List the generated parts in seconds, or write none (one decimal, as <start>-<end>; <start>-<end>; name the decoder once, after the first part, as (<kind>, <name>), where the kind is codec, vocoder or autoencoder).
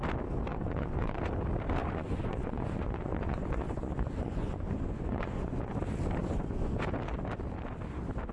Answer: 0.5-1.2 (vocoder, Vocos); 1.8-5.7; 6.2-6.8